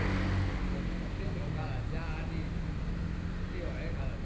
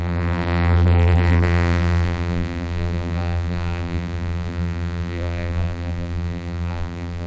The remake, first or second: second